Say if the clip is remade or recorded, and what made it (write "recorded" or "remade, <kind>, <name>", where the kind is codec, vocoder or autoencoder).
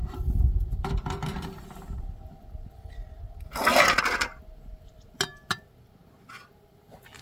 recorded